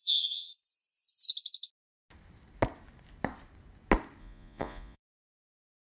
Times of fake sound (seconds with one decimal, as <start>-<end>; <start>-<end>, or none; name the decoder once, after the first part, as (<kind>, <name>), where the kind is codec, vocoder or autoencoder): 0.0-0.5 (vocoder, Vocos); 4.2-5.1